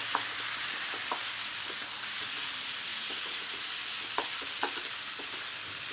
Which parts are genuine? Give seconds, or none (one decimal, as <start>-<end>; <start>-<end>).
0.0-2.9; 3.7-5.9